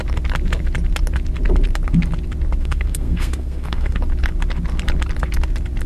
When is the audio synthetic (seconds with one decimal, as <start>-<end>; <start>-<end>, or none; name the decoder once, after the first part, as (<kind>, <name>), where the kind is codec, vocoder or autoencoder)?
2.6-4.0 (codec, SNAC)